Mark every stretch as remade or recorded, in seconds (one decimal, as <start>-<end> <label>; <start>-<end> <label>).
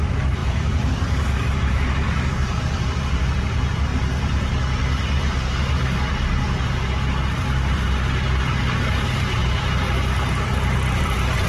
0.0-3.9 remade; 3.9-8.9 recorded; 8.9-11.5 remade